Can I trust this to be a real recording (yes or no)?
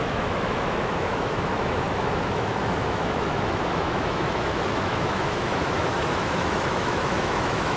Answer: no